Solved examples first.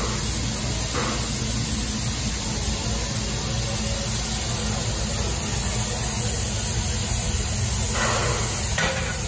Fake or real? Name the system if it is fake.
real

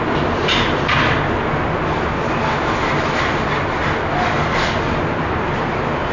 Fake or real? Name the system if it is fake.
real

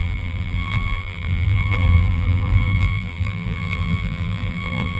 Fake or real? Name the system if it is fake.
fake, vocoder, BigVGAN v2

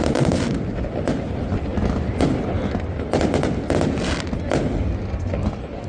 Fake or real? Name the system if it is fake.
real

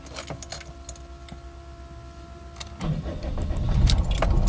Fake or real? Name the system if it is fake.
real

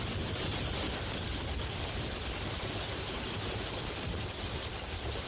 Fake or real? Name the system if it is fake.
real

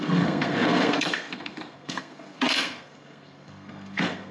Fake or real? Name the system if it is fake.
fake, codec, SNAC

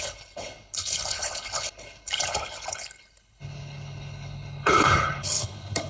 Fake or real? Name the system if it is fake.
fake, codec, HILCodec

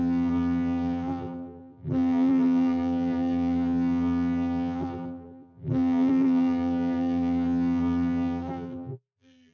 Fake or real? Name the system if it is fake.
fake, vocoder, BigVGAN v2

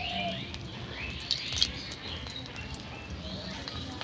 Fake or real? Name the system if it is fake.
real